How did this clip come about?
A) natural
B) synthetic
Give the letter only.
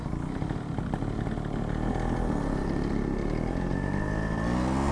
A